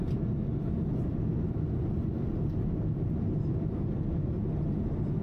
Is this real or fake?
real